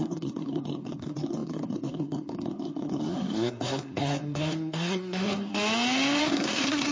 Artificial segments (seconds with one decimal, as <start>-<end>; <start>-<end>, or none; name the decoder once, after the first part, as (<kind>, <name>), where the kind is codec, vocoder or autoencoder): 0.0-5.5 (codec, SNAC); 6.2-6.9